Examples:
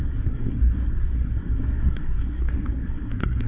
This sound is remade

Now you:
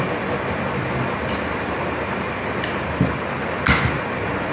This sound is recorded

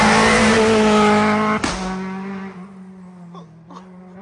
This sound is recorded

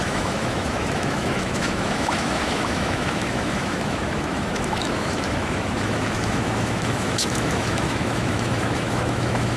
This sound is remade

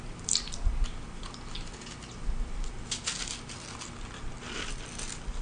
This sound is recorded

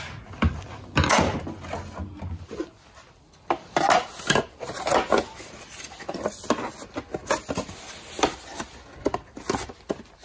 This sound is recorded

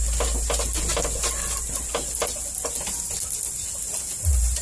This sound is recorded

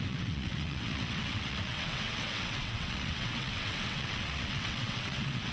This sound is remade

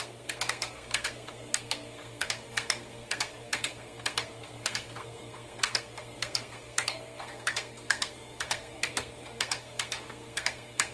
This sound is remade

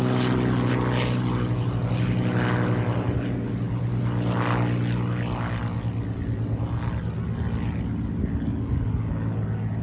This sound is recorded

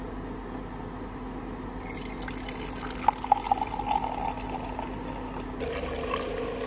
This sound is recorded